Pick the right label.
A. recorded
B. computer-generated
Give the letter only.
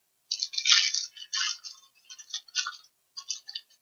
A